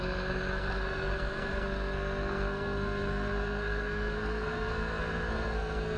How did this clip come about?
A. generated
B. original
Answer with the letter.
A